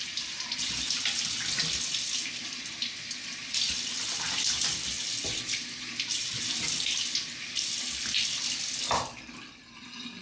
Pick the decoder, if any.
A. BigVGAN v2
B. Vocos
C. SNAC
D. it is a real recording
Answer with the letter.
D